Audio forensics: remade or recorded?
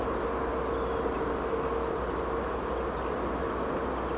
recorded